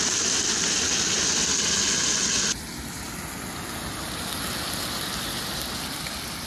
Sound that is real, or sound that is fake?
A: real